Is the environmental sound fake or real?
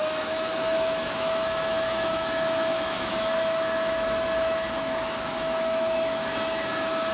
fake